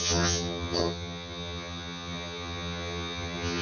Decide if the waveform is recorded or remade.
remade